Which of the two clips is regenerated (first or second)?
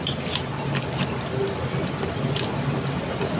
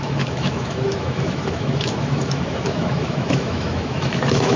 second